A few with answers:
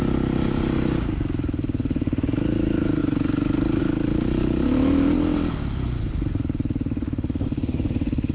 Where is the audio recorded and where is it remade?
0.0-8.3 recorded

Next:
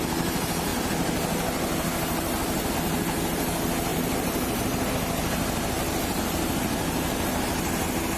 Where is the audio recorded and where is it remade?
0.0-3.9 recorded; 3.9-4.9 remade; 4.9-8.2 recorded